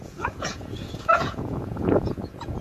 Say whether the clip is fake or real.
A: fake